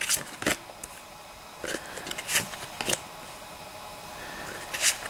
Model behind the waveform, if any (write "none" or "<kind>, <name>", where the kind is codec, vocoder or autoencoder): none